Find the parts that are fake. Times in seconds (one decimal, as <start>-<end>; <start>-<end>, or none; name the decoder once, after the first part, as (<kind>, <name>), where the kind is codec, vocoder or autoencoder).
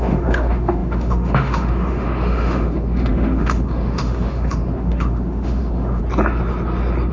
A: 0.0-6.0 (autoencoder, DAC-VAE)